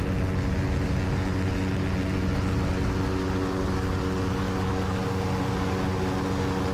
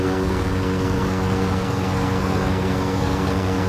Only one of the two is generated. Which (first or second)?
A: second